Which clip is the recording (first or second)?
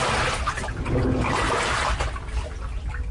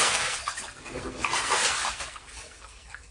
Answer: first